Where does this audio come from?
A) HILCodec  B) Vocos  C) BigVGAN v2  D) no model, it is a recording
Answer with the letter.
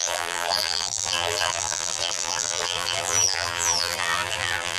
C